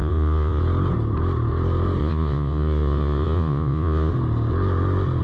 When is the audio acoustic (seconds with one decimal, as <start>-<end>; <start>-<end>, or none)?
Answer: 0.6-2.0; 4.1-5.2